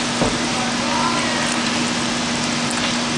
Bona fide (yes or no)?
yes